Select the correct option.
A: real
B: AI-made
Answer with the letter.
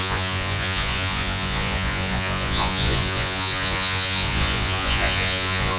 B